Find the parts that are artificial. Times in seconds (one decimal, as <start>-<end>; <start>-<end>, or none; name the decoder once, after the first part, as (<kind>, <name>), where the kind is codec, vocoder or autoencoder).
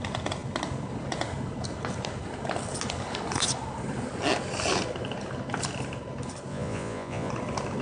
6.5-7.3 (vocoder, Vocos)